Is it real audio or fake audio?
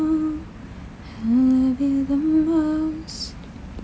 real